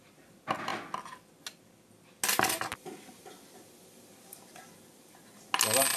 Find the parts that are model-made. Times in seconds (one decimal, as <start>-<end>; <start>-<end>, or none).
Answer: none